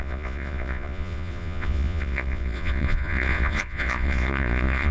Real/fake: fake